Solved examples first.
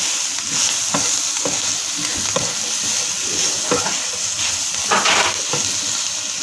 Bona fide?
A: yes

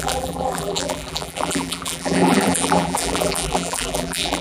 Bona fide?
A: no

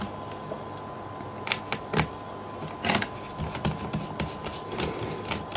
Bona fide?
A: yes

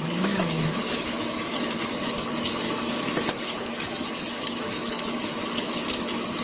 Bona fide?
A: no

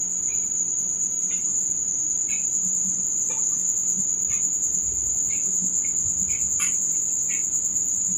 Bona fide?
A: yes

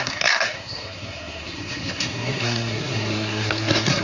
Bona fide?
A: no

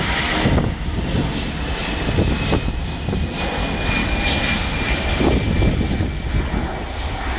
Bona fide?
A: yes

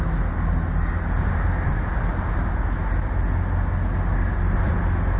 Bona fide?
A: yes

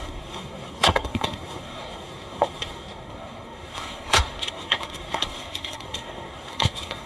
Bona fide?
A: no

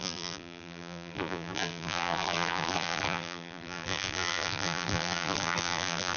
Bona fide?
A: no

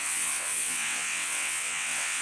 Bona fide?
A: no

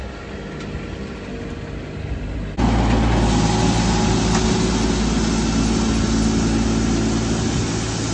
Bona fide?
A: yes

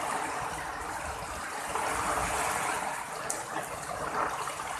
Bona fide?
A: yes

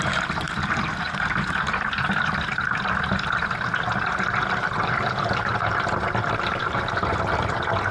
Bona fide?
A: no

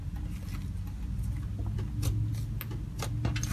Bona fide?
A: yes